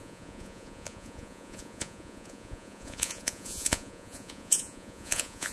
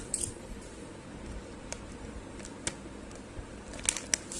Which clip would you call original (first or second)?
second